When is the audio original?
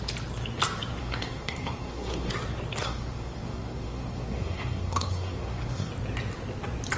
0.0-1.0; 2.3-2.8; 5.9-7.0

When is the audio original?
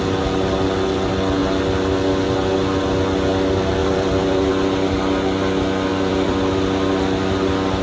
0.0-3.8; 4.5-5.9; 6.4-7.8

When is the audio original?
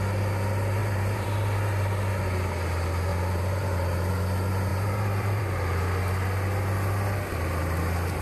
0.0-0.8; 2.0-3.1; 4.1-4.7; 5.4-7.3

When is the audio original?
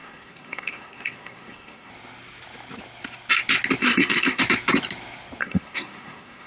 1.9-3.8; 4.4-5.4